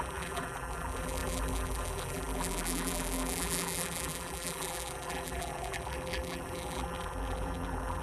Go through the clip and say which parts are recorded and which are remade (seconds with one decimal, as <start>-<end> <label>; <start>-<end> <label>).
0.0-8.0 remade